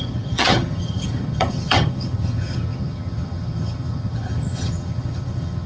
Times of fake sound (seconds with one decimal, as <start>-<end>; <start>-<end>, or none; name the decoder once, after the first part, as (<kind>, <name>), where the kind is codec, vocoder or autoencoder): 0.0-5.7 (vocoder, HiFi-GAN)